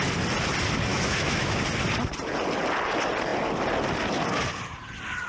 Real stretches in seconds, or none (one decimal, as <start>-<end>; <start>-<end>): 0.0-0.9; 1.6-5.3